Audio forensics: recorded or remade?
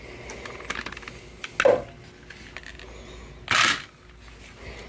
recorded